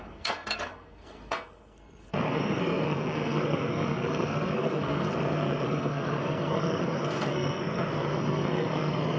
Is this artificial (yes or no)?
yes